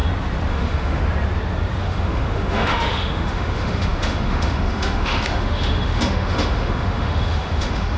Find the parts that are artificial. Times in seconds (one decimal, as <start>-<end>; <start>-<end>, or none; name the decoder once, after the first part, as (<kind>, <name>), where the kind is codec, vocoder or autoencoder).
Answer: 0.5-1.0 (autoencoder, DAC-VAE); 1.8-8.0